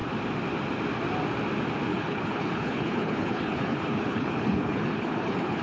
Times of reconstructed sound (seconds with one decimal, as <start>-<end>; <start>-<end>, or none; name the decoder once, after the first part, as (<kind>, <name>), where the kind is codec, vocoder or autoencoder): 1.9-5.6 (codec, HILCodec)